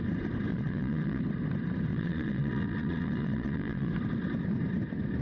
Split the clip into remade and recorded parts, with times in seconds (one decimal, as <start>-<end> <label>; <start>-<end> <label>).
0.0-0.5 recorded; 0.5-1.2 remade; 1.2-1.9 recorded; 1.9-3.9 remade; 3.9-5.2 recorded

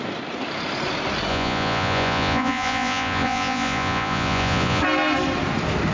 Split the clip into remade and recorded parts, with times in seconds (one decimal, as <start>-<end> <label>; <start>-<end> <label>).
0.0-1.3 recorded; 1.3-4.8 remade; 4.8-5.9 recorded

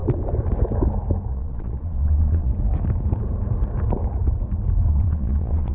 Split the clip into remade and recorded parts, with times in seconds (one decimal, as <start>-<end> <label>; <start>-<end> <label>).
0.0-1.3 recorded; 1.3-2.5 remade; 2.5-4.9 recorded; 4.9-5.7 remade

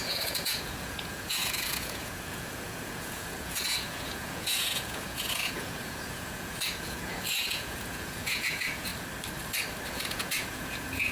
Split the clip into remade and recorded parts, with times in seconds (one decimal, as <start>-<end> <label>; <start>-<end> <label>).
0.0-8.9 remade; 8.9-9.9 recorded; 9.9-11.1 remade

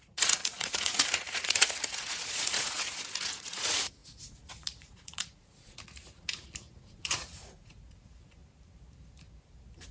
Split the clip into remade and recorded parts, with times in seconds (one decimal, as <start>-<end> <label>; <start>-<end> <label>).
0.0-8.4 remade; 8.4-9.9 recorded

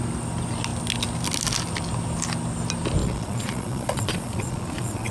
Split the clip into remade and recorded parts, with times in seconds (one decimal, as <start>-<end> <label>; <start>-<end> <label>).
0.0-3.0 recorded; 3.0-5.1 remade

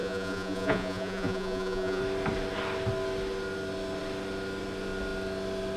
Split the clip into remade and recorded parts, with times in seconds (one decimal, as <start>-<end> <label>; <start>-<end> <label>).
0.0-2.0 remade; 2.0-5.8 recorded

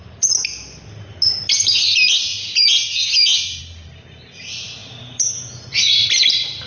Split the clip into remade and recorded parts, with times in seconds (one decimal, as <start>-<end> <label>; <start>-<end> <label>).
0.0-2.3 recorded; 2.3-3.6 remade; 3.6-6.7 recorded